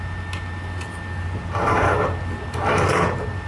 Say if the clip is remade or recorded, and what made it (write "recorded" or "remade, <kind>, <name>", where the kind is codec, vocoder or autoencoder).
recorded